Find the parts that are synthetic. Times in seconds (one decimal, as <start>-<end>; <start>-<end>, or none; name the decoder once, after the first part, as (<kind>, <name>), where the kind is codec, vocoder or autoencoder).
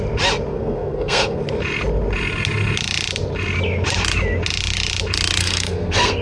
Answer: 0.5-1.4 (codec, SNAC); 5.4-6.2